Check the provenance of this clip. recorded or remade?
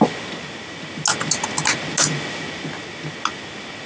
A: recorded